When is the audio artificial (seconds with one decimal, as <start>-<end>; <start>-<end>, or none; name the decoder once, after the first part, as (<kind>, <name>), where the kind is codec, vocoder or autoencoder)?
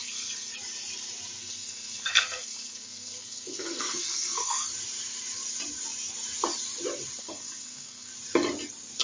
0.0-0.5 (codec, SNAC); 1.4-4.7; 7.2-8.1